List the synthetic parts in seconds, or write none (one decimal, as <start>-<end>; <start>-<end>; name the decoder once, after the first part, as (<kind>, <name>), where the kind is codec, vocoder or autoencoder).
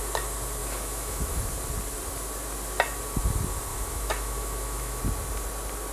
0.6-1.4 (autoencoder, DAC-VAE); 3.7-5.0